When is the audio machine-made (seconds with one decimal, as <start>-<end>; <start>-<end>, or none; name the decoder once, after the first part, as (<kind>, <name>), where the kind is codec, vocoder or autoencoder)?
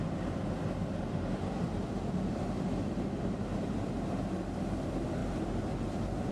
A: 0.8-3.9 (vocoder, BigVGAN v2); 5.2-6.3